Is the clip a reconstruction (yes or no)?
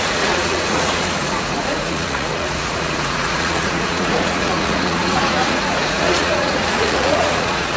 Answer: yes